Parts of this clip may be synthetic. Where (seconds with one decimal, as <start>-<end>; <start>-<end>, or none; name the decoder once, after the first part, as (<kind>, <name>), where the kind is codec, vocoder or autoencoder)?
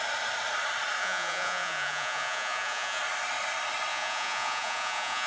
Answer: 1.0-3.0 (vocoder, Vocos); 3.9-5.3